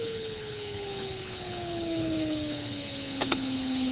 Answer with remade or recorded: remade